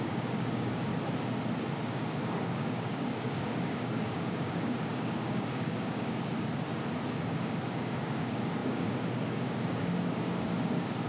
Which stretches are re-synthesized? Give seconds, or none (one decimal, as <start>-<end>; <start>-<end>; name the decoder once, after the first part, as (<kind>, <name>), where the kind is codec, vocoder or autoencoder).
0.0-0.9 (codec, DAC); 1.9-6.3; 7.2-11.1